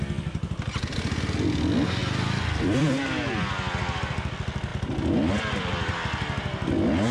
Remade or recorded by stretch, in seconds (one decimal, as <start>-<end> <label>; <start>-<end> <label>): 0.0-2.0 recorded; 2.0-2.9 remade; 2.9-7.1 recorded